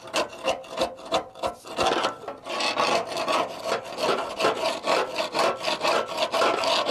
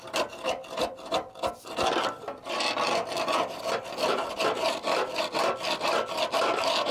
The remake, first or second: second